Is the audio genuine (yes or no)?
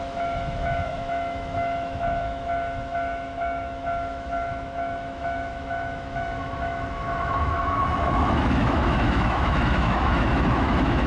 no